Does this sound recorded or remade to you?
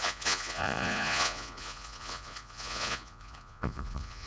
remade